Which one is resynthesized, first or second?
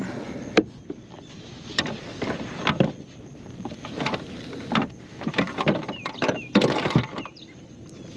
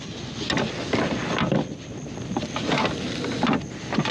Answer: first